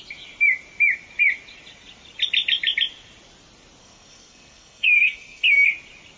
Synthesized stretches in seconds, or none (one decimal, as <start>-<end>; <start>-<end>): 3.8-5.7